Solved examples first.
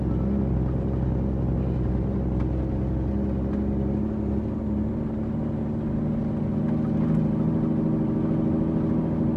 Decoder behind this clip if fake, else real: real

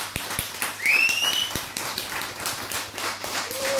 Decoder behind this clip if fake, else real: fake, vocoder, BigVGAN v2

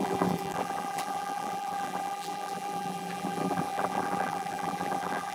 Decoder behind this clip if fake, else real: fake, vocoder, BigVGAN v2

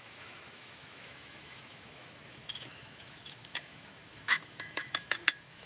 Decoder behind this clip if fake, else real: fake, autoencoder, DAC-VAE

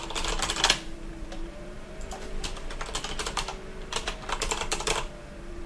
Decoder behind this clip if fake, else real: fake, vocoder, BigVGAN v2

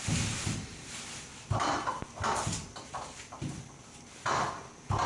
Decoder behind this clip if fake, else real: real